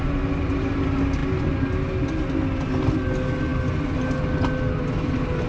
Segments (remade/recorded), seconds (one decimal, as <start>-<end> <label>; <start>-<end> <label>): 0.0-5.5 recorded